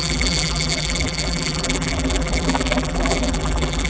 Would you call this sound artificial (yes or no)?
yes